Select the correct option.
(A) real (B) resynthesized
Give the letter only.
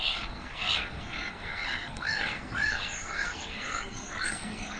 B